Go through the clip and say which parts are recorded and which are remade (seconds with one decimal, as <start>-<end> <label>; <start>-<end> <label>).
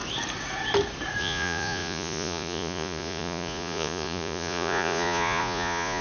0.0-1.2 recorded; 1.2-6.0 remade